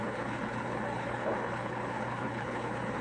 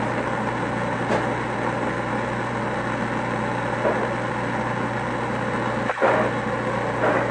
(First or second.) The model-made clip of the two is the first